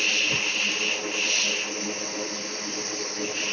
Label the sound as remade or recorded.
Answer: recorded